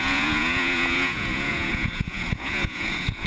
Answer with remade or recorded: remade